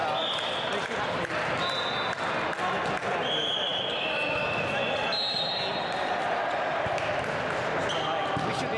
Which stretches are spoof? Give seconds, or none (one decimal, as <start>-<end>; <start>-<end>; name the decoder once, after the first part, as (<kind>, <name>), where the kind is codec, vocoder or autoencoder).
none